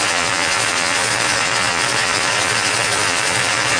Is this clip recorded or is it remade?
remade